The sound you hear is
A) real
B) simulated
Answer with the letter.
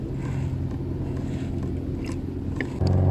A